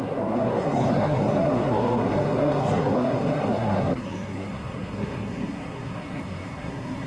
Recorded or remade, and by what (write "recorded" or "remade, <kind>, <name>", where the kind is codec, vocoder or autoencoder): remade, codec, SNAC